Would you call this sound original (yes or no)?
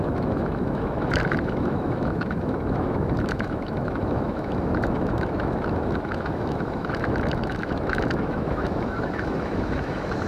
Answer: no